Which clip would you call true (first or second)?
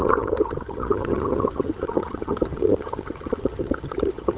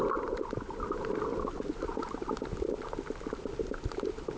second